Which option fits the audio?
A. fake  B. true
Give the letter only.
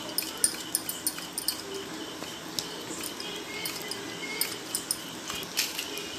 B